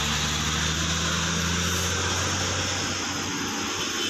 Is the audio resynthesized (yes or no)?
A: no